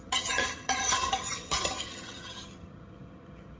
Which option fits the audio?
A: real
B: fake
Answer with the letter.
B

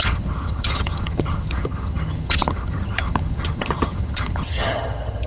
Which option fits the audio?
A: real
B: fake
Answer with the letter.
B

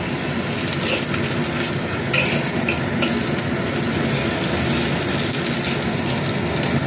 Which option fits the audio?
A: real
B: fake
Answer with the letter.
A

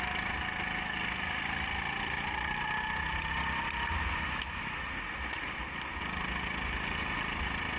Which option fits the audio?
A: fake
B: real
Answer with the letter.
B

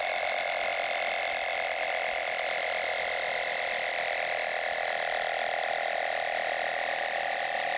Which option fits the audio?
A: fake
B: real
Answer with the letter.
B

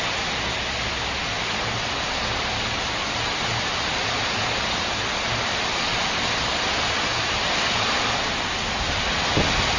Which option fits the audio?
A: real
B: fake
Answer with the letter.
A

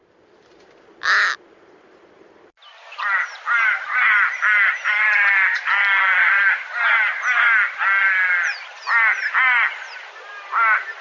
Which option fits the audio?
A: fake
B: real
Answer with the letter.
B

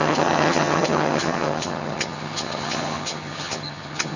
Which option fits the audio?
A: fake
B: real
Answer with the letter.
A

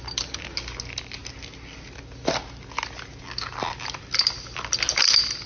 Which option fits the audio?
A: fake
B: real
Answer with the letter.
B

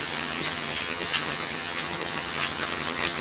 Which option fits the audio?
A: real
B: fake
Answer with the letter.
B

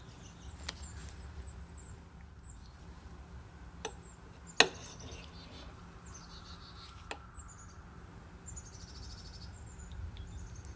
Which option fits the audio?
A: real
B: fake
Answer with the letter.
A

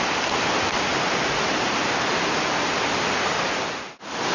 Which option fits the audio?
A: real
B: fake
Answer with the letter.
A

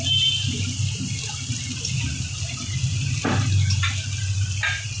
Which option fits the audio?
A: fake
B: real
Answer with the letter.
B